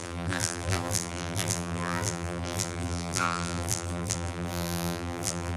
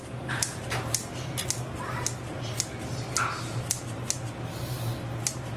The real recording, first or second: second